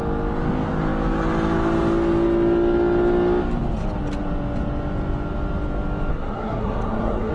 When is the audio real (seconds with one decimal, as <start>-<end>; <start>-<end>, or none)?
0.0-6.1